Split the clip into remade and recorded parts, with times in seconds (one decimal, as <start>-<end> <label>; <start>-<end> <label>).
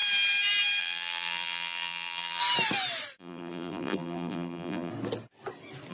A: 0.0-0.8 recorded; 0.8-2.4 remade; 2.4-3.2 recorded; 3.2-4.9 remade; 4.9-5.9 recorded